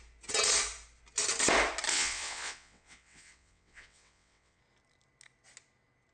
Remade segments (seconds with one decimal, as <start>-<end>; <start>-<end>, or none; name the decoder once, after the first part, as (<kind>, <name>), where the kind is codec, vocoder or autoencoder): 1.9-4.6 (vocoder, WaveNeXt)